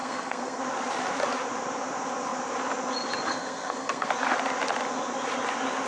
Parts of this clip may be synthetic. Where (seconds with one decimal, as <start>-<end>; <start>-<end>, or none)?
0.0-0.6; 3.3-4.1